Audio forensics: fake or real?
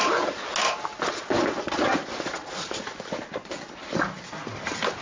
real